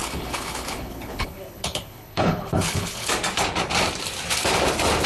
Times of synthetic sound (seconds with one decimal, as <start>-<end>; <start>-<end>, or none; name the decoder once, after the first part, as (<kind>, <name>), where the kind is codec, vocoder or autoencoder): 0.0-3.1 (codec, HILCodec)